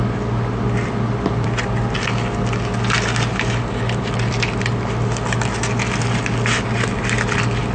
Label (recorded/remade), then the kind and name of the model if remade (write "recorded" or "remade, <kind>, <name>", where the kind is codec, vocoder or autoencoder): recorded